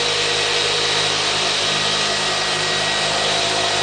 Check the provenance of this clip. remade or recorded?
recorded